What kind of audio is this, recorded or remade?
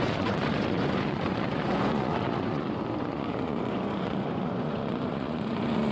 remade